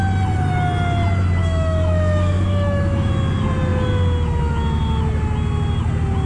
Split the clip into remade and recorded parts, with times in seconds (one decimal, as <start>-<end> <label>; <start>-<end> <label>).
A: 0.0-1.4 recorded; 1.4-3.1 remade; 3.1-6.3 recorded